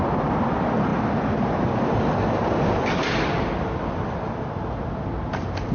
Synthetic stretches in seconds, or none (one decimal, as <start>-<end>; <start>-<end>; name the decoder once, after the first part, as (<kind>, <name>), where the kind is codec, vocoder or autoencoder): none